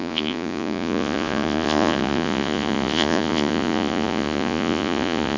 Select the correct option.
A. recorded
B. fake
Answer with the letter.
B